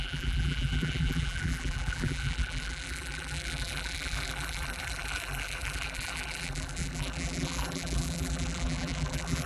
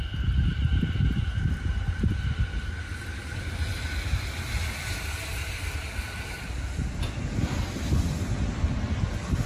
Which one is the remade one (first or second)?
first